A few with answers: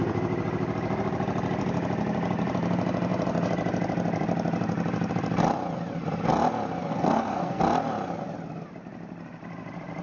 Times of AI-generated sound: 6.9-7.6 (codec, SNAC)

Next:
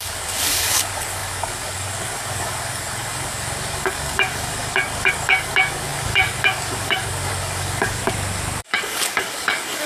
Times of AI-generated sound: 0.0-8.0 (codec, DAC); 8.6-9.9

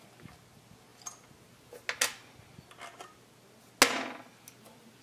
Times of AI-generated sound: none

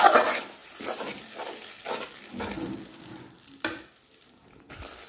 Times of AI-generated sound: none

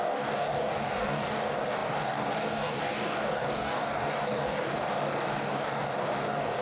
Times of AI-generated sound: 0.0-6.6 (codec, DAC)